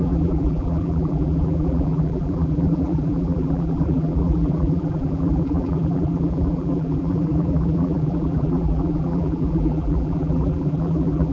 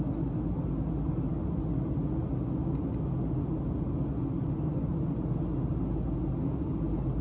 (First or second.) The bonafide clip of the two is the second